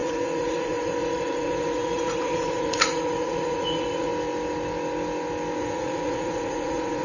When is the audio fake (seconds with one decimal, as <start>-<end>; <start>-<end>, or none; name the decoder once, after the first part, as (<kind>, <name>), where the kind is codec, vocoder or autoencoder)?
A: 0.0-4.1 (vocoder, Vocos); 5.6-7.0